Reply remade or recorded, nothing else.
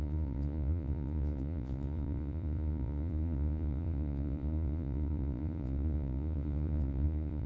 remade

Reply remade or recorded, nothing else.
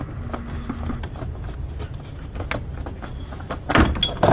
recorded